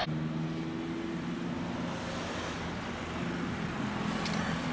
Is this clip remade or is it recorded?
recorded